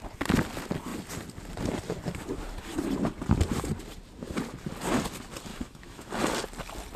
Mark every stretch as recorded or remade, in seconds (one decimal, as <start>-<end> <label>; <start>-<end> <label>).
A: 0.0-5.5 recorded; 5.5-6.1 remade; 6.1-7.0 recorded